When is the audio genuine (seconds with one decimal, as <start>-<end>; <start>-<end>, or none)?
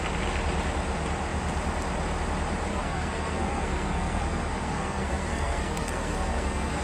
0.0-2.7